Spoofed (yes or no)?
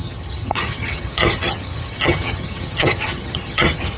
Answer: yes